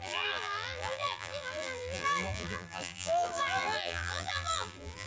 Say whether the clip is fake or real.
fake